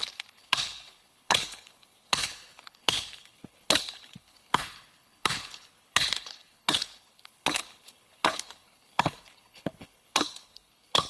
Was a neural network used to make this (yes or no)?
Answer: yes